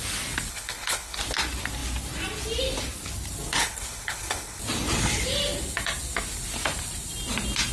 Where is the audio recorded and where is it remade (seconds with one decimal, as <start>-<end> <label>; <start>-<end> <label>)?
0.0-0.5 recorded; 0.5-1.2 remade; 1.2-3.6 recorded; 3.6-4.6 remade; 4.6-7.7 recorded